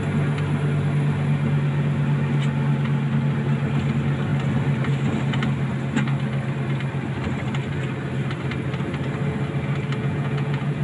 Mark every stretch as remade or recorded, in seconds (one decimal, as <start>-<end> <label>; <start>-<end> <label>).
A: 0.0-10.0 recorded; 10.0-10.8 remade